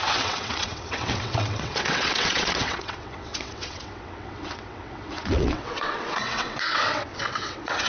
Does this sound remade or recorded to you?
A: remade